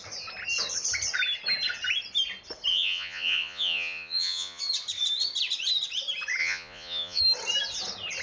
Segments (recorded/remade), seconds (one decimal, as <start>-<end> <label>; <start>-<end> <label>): 0.0-2.7 recorded; 2.7-4.6 remade; 4.6-6.4 recorded; 6.4-7.2 remade; 7.2-8.2 recorded